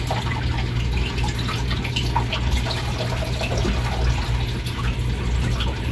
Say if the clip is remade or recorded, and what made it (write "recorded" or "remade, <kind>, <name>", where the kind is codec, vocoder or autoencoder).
recorded